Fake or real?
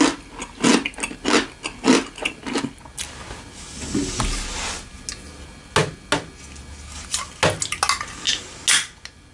real